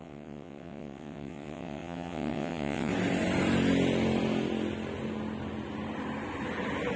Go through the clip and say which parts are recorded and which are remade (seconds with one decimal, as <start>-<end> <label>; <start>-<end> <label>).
0.0-2.9 remade; 2.9-7.0 recorded